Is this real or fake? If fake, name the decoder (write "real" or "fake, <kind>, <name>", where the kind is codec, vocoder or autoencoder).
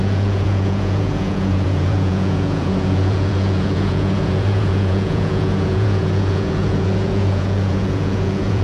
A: fake, vocoder, Vocos